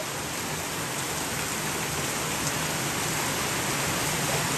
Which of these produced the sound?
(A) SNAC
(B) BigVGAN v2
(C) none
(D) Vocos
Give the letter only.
C